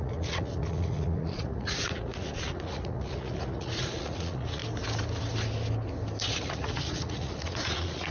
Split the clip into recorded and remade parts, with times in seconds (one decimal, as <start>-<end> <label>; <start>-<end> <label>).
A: 0.0-4.6 remade; 4.6-6.3 recorded; 6.3-8.1 remade